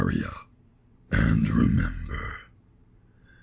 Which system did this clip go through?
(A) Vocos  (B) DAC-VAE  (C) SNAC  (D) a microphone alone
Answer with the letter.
D